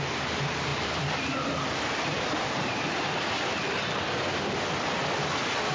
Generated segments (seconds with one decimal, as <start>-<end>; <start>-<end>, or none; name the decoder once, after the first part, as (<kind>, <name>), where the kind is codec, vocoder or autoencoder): 0.7-2.9 (vocoder, BigVGAN v2)